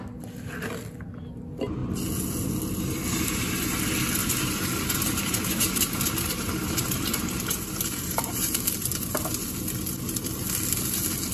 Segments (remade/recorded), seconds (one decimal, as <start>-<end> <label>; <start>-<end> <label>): 0.0-4.2 recorded; 4.2-9.3 remade; 9.3-11.3 recorded